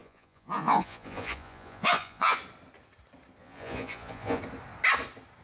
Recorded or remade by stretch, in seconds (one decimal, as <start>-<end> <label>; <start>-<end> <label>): 0.0-2.4 remade; 2.4-3.4 recorded; 3.4-4.4 remade; 4.4-5.4 recorded